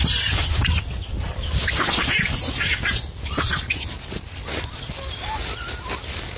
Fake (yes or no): no